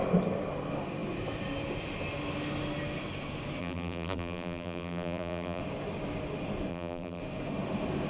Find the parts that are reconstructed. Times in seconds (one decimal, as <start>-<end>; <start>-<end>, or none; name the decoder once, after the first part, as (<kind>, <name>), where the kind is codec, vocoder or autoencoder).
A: 3.6-5.6 (vocoder, BigVGAN v2); 6.7-7.2